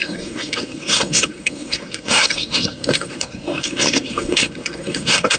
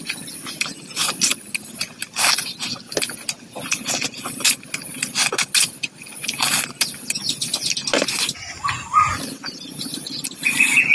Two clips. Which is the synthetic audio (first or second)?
first